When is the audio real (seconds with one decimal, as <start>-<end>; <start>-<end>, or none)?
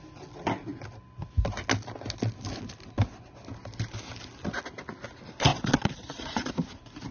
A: 0.0-5.5; 6.5-7.1